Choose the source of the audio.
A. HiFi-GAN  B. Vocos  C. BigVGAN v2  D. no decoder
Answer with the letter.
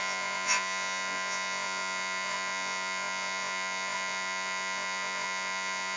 B